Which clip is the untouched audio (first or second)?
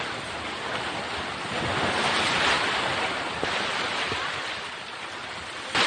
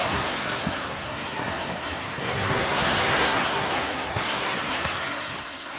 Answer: first